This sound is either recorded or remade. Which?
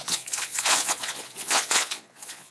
remade